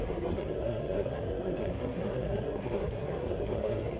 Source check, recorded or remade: remade